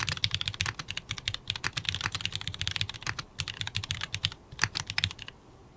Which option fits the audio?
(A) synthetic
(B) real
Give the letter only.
B